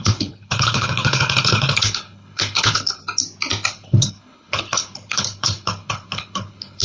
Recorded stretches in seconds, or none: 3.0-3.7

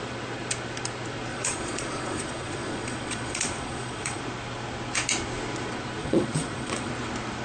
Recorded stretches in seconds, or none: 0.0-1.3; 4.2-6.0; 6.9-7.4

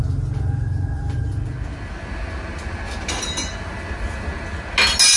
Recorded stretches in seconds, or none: 0.0-5.2

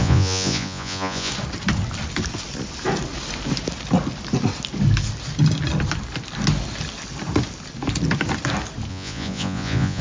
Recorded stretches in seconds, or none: 1.3-8.9

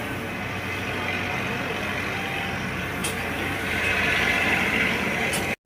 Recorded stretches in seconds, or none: 0.0-3.0; 5.3-5.7